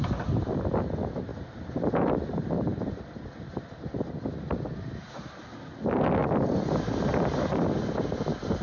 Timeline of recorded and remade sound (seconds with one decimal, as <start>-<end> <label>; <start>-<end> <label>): 0.0-8.6 recorded